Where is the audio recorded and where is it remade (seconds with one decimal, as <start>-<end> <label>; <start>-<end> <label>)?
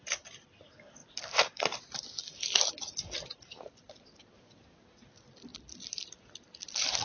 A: 0.0-7.0 recorded